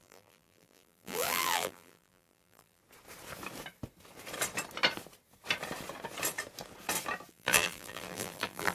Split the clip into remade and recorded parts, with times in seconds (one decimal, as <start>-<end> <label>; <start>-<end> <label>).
0.0-2.8 remade; 2.8-7.3 recorded; 7.3-8.7 remade